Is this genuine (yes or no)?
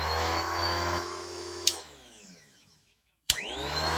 no